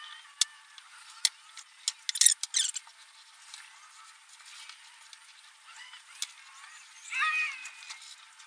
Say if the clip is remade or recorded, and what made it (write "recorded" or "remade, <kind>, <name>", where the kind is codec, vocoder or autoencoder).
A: recorded